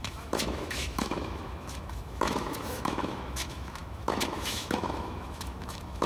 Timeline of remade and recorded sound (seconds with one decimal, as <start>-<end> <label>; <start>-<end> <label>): 0.0-6.1 remade